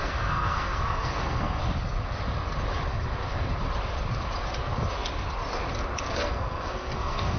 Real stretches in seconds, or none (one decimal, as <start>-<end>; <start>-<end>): 1.6-6.0